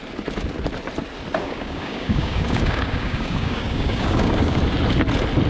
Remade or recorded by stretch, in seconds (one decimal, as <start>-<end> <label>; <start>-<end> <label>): 0.0-1.4 recorded; 1.4-4.6 remade; 4.6-5.5 recorded